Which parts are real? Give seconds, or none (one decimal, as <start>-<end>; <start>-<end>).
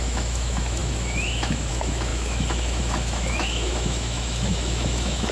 none